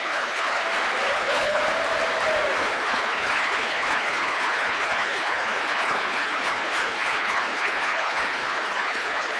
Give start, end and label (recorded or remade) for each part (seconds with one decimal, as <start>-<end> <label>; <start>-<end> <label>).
0.0-0.6 remade; 0.6-1.1 recorded; 1.1-1.6 remade; 1.6-2.6 recorded; 2.6-9.4 remade